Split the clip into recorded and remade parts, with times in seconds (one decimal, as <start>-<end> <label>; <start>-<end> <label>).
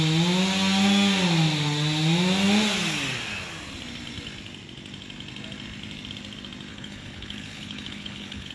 0.0-6.7 recorded; 6.7-8.5 remade